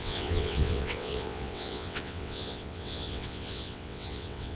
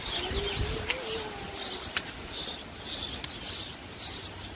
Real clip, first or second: second